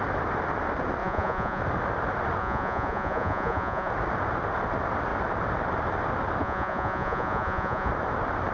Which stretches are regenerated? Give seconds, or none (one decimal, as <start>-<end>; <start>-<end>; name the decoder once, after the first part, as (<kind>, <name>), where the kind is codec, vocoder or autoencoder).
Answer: 1.0-1.6 (vocoder, Vocos); 2.4-3.9; 6.4-7.9